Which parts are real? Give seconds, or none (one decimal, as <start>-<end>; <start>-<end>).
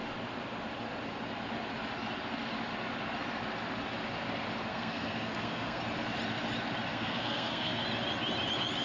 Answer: 0.0-4.7; 5.8-6.9; 7.8-8.8